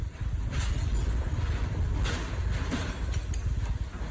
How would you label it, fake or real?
real